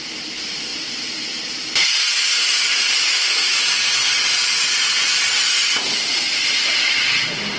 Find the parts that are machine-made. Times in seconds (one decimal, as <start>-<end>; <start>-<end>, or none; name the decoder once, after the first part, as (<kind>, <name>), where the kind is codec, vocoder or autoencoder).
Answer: none